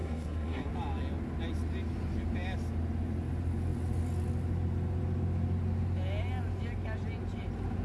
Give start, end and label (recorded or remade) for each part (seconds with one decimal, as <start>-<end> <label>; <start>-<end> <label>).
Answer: 0.0-0.7 remade; 0.7-7.8 recorded